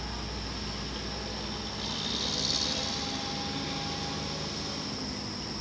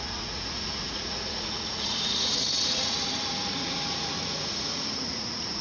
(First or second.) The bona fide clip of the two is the first